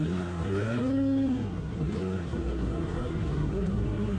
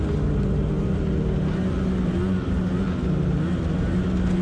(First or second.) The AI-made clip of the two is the first